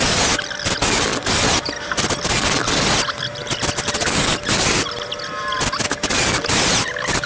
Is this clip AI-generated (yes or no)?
no